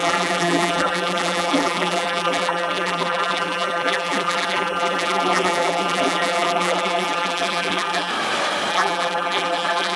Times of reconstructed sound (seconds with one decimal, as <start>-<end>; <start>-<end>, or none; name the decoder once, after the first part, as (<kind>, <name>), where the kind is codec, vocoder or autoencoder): 0.0-8.1 (vocoder, BigVGAN v2); 8.7-10.0